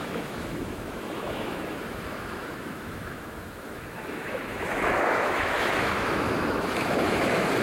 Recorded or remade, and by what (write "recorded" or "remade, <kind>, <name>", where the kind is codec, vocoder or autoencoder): remade, autoencoder, DAC-VAE